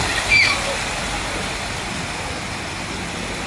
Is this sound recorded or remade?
recorded